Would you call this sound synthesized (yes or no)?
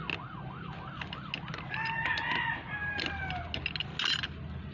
no